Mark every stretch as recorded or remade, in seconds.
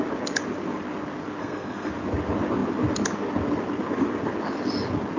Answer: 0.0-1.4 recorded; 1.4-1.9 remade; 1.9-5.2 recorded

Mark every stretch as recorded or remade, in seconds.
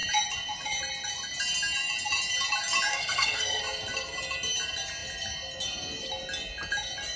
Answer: 0.0-2.9 recorded; 2.9-3.6 remade; 3.6-7.2 recorded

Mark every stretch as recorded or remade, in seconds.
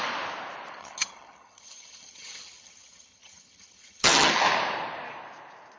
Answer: 0.0-0.8 recorded; 0.8-4.3 remade; 4.3-5.8 recorded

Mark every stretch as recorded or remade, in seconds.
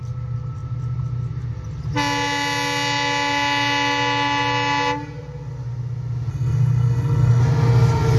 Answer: 0.0-6.3 recorded; 6.3-7.4 remade; 7.4-8.2 recorded